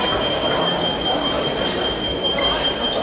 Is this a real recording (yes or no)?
yes